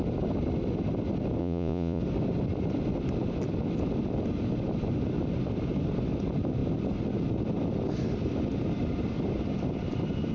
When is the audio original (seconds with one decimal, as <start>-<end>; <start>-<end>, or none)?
0.0-1.4; 2.0-10.3